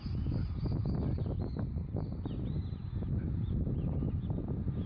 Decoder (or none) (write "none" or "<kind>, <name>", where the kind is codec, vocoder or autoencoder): none